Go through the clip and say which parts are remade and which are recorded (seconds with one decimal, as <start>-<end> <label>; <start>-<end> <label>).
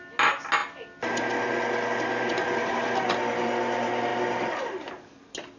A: 0.0-5.6 recorded